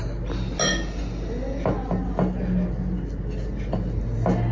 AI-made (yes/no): no